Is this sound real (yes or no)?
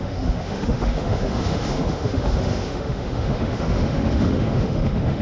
no